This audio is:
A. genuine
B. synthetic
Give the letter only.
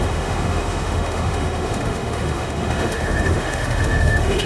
B